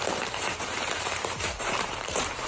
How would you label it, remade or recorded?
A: remade